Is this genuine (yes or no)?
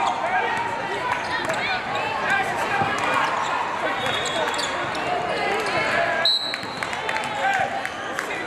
yes